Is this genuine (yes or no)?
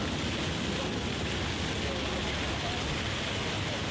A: yes